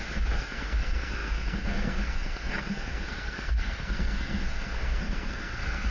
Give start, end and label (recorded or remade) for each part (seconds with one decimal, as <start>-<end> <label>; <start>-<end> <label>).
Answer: 0.0-5.9 remade